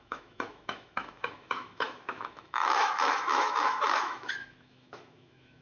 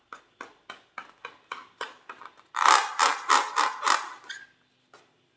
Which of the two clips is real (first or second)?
second